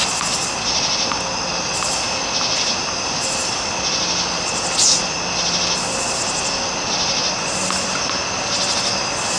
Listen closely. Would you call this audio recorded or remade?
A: recorded